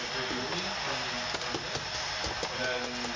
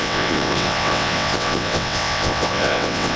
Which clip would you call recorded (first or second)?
first